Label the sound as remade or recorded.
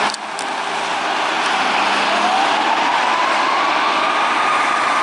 recorded